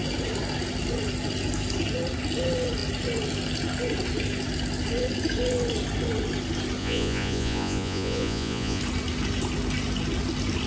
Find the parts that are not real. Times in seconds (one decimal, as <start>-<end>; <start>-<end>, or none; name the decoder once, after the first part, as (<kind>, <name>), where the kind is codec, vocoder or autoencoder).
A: 6.8-8.8 (vocoder, Vocos)